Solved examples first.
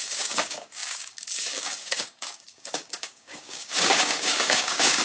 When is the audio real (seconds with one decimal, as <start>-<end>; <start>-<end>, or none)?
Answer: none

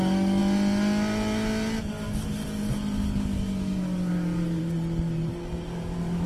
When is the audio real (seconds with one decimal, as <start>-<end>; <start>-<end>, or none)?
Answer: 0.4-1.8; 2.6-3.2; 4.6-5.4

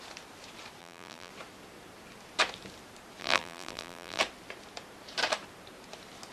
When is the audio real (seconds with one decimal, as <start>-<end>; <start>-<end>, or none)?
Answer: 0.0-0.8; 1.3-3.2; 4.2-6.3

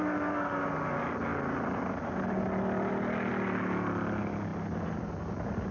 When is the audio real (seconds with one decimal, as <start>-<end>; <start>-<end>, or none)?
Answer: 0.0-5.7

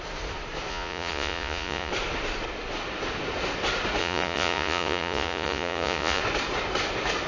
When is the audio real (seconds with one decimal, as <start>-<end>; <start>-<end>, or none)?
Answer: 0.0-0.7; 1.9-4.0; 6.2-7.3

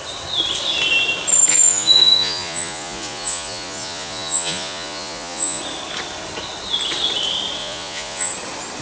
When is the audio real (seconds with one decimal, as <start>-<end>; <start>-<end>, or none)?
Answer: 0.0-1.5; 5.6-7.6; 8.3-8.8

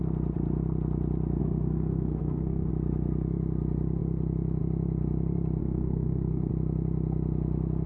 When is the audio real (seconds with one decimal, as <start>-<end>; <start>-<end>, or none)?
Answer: 0.0-1.4; 2.7-5.6; 6.5-7.9

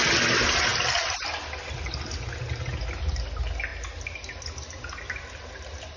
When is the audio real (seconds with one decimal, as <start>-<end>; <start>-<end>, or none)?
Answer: 0.0-6.0